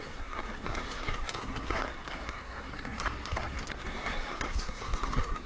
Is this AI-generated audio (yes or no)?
yes